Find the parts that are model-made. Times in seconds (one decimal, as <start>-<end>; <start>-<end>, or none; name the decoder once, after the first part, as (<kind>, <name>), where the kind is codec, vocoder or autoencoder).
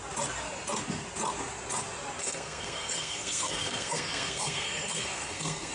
2.2-5.7 (codec, SNAC)